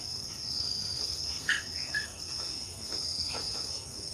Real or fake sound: fake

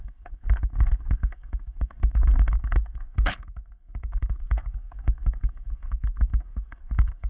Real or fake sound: fake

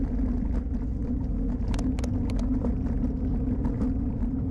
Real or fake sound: real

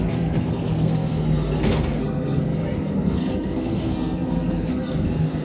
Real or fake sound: fake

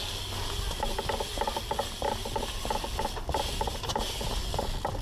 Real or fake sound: real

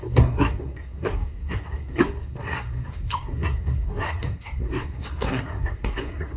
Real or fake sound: fake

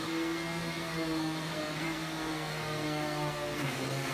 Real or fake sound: fake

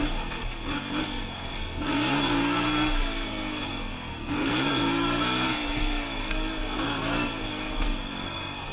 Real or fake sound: fake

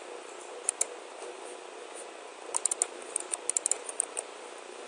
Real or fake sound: real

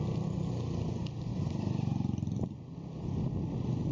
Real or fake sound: real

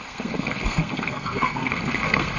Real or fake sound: fake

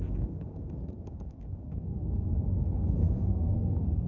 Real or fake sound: fake